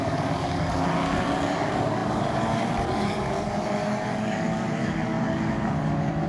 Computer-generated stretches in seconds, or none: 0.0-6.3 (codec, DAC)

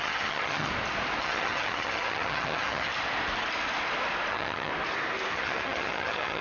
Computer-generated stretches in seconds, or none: 0.0-0.7 (vocoder, HiFi-GAN); 1.2-2.9; 4.3-4.7; 5.3-6.4

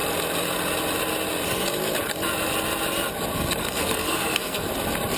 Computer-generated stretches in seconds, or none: 3.6-4.7 (codec, SNAC)

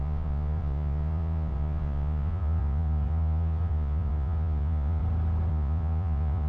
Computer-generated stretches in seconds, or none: 0.0-5.0 (vocoder, Vocos); 5.5-6.5

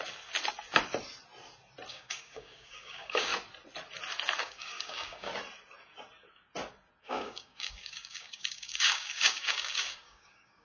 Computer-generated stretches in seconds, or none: 1.9-3.3 (codec, DAC); 4.4-5.3; 7.0-10.6

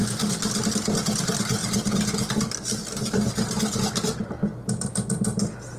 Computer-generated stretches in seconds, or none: none

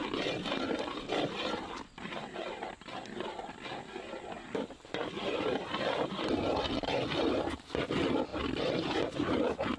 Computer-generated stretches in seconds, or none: none